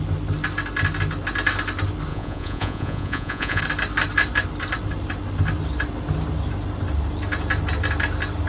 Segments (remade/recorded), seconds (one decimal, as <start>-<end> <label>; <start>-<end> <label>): 0.0-2.1 recorded; 2.1-3.6 remade; 3.6-8.5 recorded